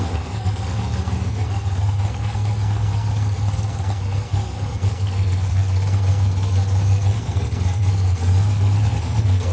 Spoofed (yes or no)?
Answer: yes